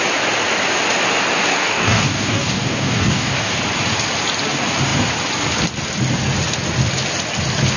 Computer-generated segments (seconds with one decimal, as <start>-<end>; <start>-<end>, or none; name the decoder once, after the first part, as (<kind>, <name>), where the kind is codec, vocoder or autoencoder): 1.5-3.6 (codec, DAC)

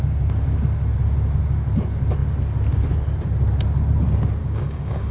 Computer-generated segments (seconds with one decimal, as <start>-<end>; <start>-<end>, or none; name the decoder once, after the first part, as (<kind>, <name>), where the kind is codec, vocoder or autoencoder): 4.4-5.1 (codec, DAC)

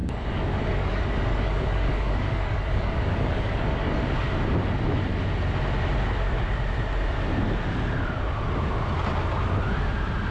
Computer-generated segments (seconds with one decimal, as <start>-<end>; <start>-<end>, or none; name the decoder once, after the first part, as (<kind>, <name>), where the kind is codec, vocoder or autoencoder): 0.0-4.0 (codec, DAC)

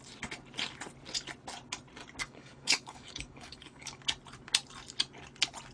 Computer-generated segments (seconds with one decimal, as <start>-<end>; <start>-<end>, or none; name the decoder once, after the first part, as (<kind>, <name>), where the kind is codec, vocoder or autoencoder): 2.2-4.0 (codec, DAC)

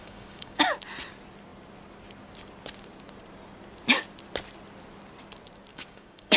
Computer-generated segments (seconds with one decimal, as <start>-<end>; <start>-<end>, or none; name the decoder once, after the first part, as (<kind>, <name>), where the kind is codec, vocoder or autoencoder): 0.0-0.6 (codec, DAC); 5.7-6.4

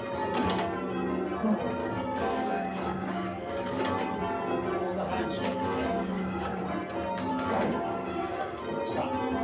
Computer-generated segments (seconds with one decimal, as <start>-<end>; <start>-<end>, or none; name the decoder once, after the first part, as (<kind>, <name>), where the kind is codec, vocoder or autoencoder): 1.8-3.8 (codec, DAC); 5.5-6.6; 7.3-8.6